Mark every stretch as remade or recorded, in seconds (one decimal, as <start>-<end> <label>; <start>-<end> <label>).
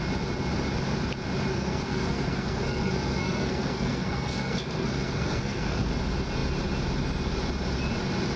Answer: 0.0-1.5 recorded; 1.5-5.9 remade; 5.9-8.4 recorded